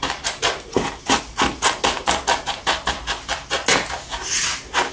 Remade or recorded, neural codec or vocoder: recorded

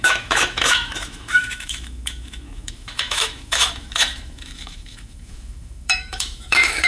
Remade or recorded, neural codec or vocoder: remade, autoencoder, DAC-VAE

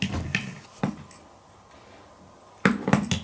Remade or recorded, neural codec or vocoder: recorded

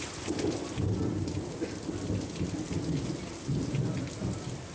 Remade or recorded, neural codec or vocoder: recorded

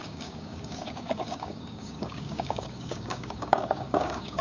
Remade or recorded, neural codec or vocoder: remade, codec, DAC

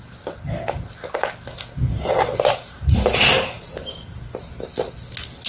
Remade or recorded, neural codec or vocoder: recorded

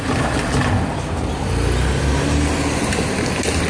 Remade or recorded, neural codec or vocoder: recorded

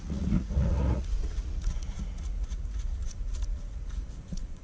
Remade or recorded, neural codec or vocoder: remade, vocoder, Vocos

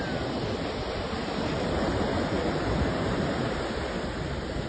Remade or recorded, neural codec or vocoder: recorded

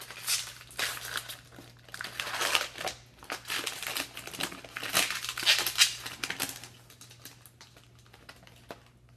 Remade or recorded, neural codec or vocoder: recorded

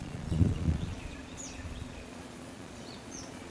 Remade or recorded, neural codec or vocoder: remade, vocoder, Vocos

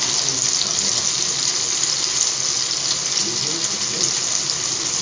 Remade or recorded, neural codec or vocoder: recorded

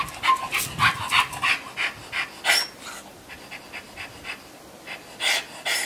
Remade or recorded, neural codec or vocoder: recorded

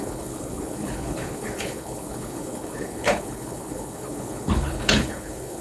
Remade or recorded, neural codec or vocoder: remade, codec, HILCodec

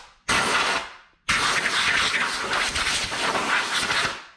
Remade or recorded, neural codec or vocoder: recorded